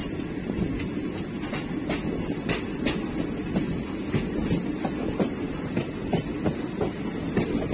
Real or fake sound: real